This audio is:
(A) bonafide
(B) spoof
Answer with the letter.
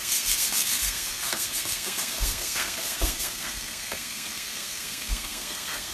B